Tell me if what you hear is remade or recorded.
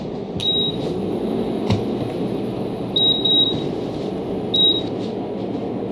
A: recorded